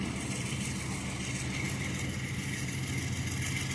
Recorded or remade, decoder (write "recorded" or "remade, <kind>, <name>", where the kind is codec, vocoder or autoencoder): recorded